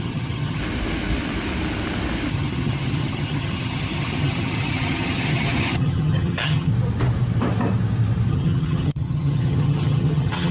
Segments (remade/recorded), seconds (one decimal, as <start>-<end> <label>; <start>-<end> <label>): 0.0-0.6 remade; 0.6-2.3 recorded; 2.3-6.7 remade; 6.7-8.3 recorded; 8.3-10.5 remade